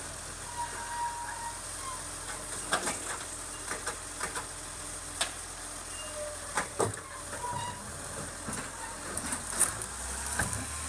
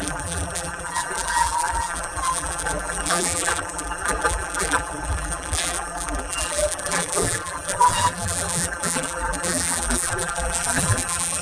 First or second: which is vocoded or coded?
second